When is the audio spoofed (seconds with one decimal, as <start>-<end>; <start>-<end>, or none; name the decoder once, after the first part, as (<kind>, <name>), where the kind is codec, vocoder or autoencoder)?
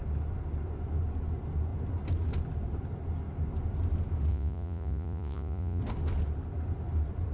4.3-5.8 (vocoder, Vocos)